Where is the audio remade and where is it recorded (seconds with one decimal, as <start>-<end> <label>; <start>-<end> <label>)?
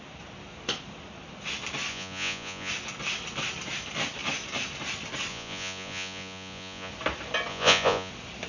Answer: 0.0-1.9 recorded; 1.9-2.7 remade; 2.7-5.3 recorded; 5.3-6.9 remade; 6.9-7.5 recorded; 7.5-8.1 remade; 8.1-8.5 recorded